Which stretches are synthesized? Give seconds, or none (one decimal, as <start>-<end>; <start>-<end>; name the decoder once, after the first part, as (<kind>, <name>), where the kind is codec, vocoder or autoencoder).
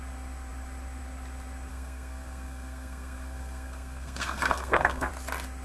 1.7-5.1 (codec, SNAC)